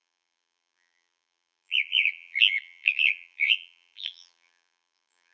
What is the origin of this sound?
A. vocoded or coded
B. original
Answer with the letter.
A